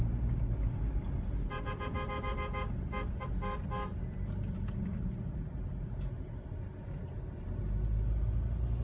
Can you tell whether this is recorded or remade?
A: recorded